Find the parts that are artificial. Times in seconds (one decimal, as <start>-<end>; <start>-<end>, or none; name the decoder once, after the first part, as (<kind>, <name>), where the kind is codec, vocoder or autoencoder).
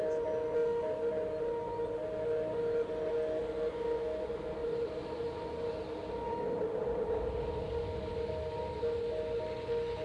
none